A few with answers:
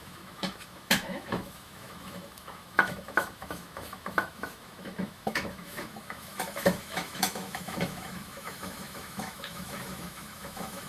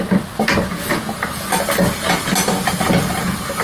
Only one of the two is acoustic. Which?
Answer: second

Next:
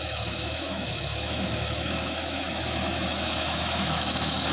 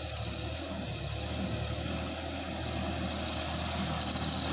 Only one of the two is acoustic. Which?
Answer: second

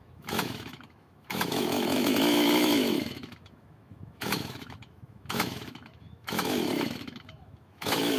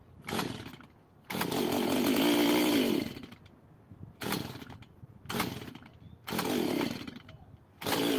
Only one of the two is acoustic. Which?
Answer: second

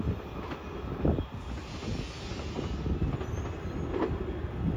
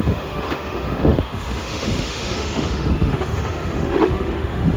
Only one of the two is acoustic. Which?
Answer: first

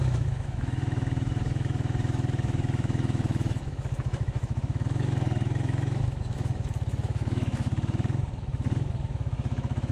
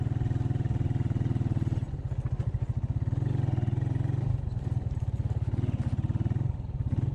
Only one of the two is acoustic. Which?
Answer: second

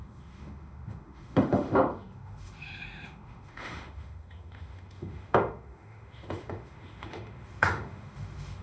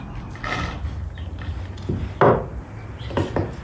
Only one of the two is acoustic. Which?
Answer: second